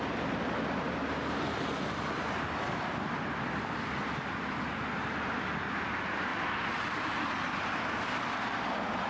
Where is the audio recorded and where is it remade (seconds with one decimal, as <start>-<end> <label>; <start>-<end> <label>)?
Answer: 0.0-9.1 recorded